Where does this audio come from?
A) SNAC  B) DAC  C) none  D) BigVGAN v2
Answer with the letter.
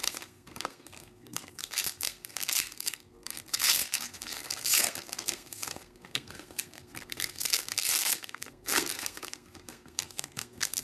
A